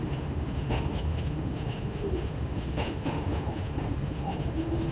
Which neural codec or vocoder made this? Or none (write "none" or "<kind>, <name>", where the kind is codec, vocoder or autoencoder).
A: autoencoder, DAC-VAE